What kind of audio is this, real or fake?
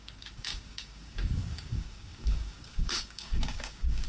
fake